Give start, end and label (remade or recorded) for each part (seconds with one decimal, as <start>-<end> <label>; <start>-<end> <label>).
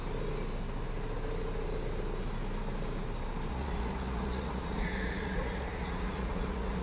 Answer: 0.0-3.5 recorded; 3.5-6.8 remade